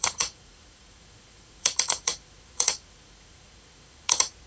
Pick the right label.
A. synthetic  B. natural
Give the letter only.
A